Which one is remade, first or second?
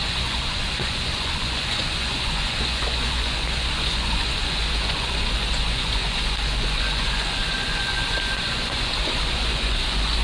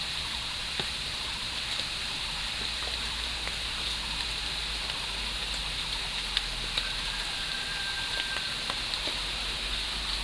first